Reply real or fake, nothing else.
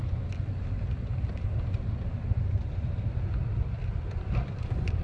real